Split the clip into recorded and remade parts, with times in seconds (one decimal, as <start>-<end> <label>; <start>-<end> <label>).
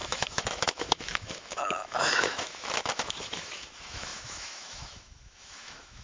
0.0-6.0 remade